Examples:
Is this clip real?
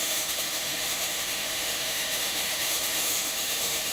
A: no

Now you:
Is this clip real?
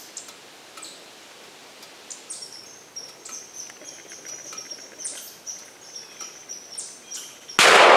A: yes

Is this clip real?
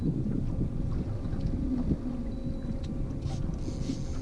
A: yes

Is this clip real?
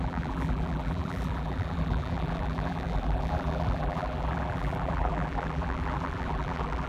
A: no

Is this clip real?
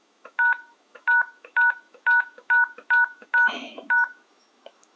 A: no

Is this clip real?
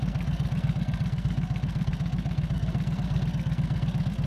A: no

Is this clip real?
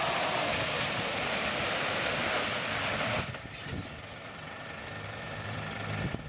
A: no